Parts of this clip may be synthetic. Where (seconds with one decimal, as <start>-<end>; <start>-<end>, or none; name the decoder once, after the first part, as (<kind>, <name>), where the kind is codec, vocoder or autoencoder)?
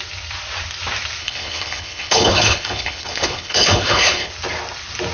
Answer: 1.2-4.3 (codec, HILCodec)